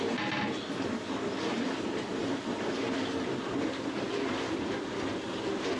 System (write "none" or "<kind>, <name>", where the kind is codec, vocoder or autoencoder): none